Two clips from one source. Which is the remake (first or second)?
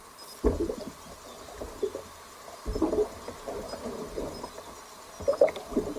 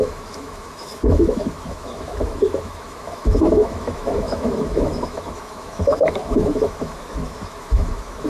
second